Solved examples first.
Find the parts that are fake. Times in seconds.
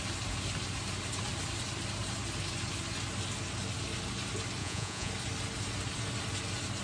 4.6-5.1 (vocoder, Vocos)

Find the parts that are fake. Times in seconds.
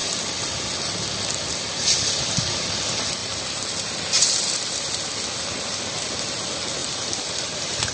3.2-3.9 (vocoder, BigVGAN v2); 6.8-7.9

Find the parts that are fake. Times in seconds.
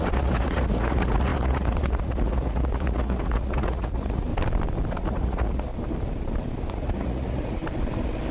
0.0-4.3 (vocoder, Vocos); 4.9-5.7; 6.7-7.6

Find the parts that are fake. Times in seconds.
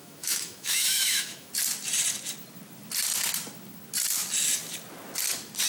0.0-1.5 (autoencoder, DAC-VAE)